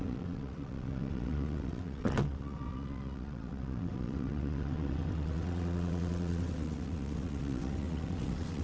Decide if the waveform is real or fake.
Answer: fake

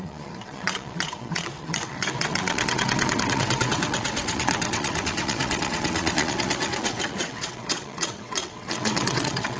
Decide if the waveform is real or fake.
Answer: fake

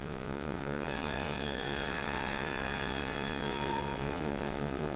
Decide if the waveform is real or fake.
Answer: fake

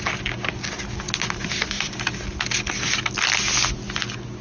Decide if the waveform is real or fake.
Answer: real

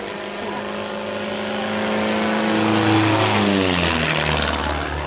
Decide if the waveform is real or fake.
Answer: real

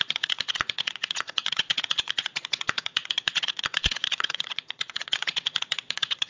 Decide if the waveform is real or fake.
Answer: fake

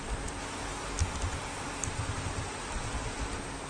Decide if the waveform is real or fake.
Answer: real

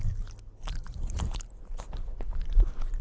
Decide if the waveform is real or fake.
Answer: real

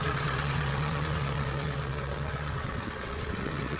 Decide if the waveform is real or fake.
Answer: fake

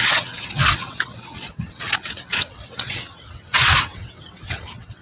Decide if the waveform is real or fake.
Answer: fake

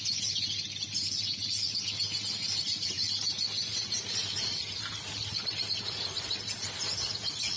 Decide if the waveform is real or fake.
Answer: real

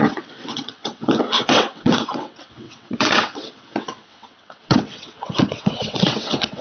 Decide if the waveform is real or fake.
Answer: fake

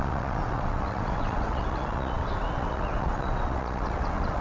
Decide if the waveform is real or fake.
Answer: fake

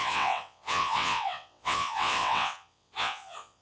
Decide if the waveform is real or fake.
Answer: fake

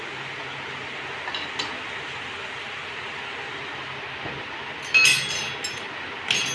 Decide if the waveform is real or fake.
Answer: real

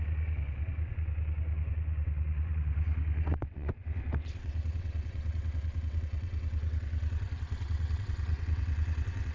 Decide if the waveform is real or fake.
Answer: fake